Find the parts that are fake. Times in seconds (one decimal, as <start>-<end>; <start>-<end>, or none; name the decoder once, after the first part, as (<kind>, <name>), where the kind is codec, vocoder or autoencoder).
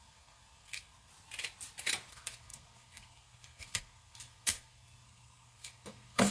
0.0-1.1 (codec, SNAC); 2.1-6.3